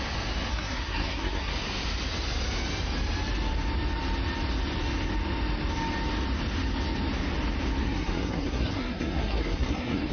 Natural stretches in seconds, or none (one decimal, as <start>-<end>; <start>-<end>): 0.0-0.5; 1.5-7.8